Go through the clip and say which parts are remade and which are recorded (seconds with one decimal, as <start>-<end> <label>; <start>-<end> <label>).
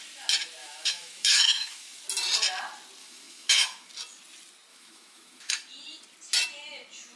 0.0-0.6 recorded; 0.6-2.0 remade; 2.0-3.0 recorded; 3.0-3.9 remade; 3.9-4.7 recorded; 4.7-5.5 remade; 5.5-7.2 recorded